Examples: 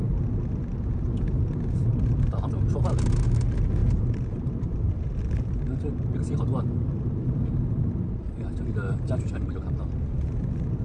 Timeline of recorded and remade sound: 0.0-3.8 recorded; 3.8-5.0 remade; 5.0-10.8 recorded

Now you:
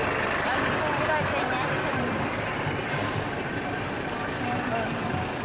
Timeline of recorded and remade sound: 0.0-1.9 recorded; 1.9-5.4 remade

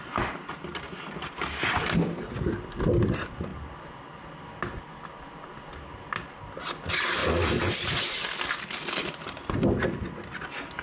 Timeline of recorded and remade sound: 0.0-3.5 recorded; 3.5-6.6 remade; 6.6-10.8 recorded

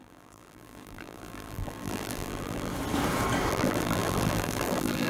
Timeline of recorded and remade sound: 0.0-2.7 remade; 2.7-3.5 recorded; 3.5-5.1 remade

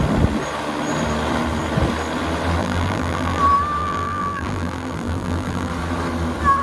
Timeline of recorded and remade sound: 0.0-2.6 recorded; 2.6-3.4 remade; 3.4-3.8 recorded; 3.8-5.7 remade; 5.7-6.6 recorded

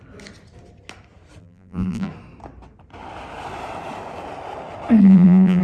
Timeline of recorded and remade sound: 0.0-1.4 recorded; 1.4-2.1 remade; 2.1-5.0 recorded; 5.0-5.6 remade

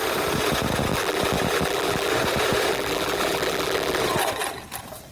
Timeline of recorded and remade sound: 0.0-0.9 recorded; 0.9-2.1 remade; 2.1-2.7 recorded; 2.7-4.0 remade; 4.0-5.1 recorded

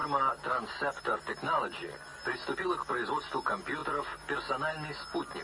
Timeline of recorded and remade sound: 0.0-5.4 recorded